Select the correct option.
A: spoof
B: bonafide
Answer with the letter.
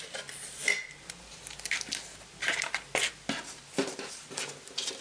B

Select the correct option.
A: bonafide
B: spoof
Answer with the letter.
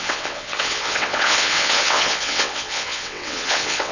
B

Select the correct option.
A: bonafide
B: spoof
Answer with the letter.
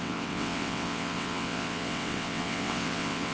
B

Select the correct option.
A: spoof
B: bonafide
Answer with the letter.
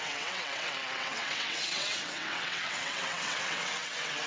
A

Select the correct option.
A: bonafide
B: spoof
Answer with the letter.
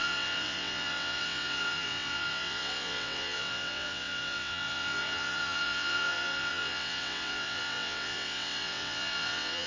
B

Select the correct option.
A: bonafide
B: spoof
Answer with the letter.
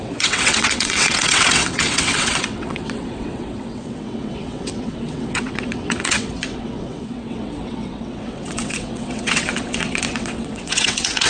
B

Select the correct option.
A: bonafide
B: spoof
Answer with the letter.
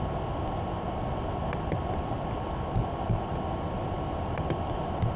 A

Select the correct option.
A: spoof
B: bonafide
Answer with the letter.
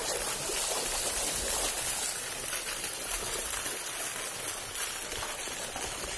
B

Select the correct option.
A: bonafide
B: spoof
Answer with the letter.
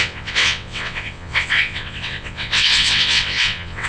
B